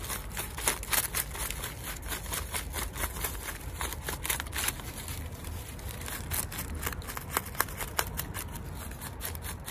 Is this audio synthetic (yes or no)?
no